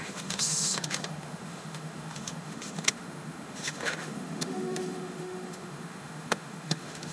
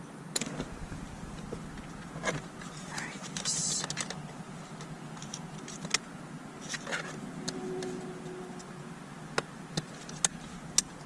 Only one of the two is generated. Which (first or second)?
first